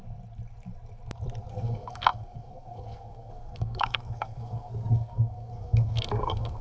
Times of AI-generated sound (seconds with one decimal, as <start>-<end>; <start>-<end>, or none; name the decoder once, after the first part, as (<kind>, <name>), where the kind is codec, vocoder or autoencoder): 1.5-6.6 (codec, SNAC)